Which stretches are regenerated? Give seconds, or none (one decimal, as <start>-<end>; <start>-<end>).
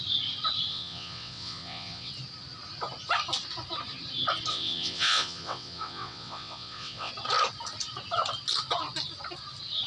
0.7-2.1; 4.5-7.1